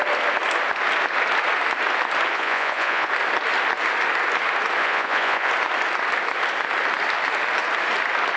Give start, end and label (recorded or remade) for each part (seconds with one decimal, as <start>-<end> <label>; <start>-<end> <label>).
0.0-2.3 recorded; 2.3-3.1 remade; 3.1-4.8 recorded; 4.8-5.5 remade; 5.5-8.4 recorded